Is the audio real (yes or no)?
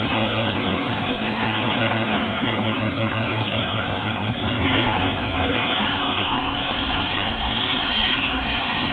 no